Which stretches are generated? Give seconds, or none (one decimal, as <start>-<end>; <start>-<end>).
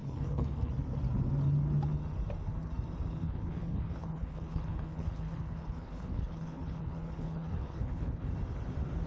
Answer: 0.0-0.7; 3.2-8.3